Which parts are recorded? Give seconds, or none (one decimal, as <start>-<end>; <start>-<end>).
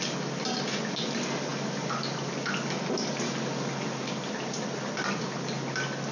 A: 0.0-6.1